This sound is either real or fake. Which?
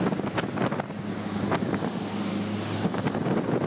real